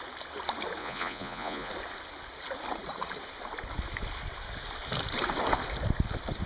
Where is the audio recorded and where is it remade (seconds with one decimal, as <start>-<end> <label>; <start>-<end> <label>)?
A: 0.0-0.8 recorded; 0.8-1.7 remade; 1.7-6.5 recorded